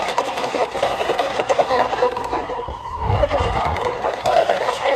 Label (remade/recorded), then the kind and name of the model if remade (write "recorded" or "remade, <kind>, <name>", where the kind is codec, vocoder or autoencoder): remade, codec, SNAC